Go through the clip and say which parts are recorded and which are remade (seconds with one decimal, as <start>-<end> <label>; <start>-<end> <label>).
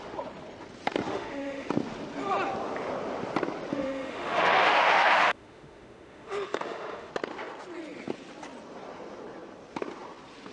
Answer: 0.0-1.1 recorded; 1.1-1.7 remade; 1.7-3.7 recorded; 3.7-7.1 remade; 7.1-10.5 recorded